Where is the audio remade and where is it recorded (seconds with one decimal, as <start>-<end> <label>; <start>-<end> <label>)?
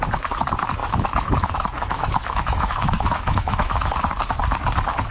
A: 0.0-0.8 recorded; 0.8-3.9 remade; 3.9-5.1 recorded